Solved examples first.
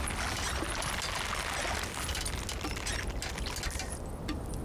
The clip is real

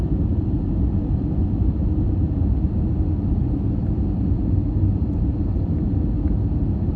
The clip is real